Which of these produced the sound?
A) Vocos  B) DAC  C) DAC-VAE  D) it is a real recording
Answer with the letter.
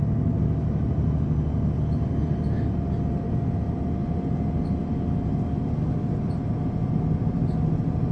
D